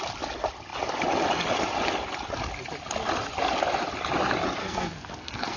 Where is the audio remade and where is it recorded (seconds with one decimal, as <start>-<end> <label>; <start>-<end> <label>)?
0.0-4.6 recorded; 4.6-5.6 remade